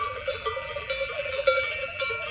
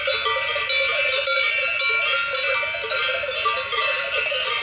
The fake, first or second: first